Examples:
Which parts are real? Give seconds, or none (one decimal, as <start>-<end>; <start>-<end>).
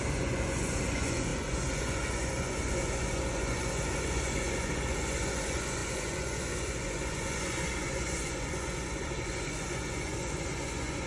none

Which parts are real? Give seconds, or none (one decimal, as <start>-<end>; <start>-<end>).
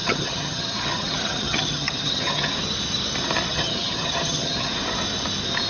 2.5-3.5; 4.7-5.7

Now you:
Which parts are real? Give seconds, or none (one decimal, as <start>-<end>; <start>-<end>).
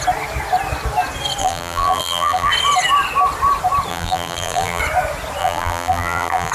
0.0-1.4; 2.5-3.9; 4.8-5.4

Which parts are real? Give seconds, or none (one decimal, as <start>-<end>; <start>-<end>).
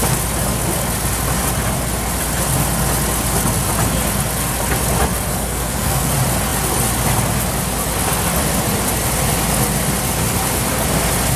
0.0-5.3; 6.1-11.4